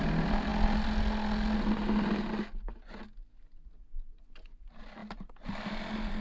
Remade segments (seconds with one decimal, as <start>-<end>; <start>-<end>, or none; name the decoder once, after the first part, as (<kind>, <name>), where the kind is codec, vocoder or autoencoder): none